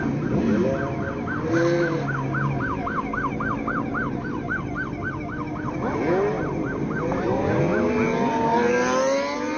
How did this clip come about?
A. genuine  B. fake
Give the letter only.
A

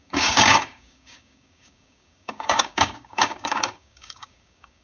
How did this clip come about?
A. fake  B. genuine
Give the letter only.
A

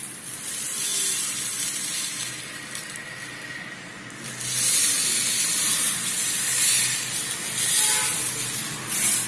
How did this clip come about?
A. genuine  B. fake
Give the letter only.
A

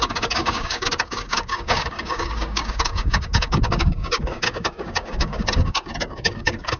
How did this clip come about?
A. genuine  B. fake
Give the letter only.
B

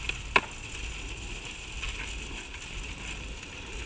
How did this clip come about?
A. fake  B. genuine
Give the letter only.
B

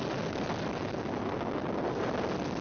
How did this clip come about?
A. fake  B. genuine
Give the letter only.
B